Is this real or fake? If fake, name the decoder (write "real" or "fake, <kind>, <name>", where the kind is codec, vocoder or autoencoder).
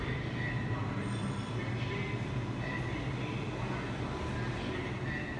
real